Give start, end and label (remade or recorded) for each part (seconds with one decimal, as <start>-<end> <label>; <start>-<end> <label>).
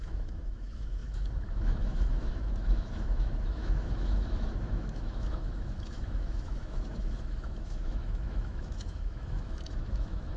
0.0-10.4 remade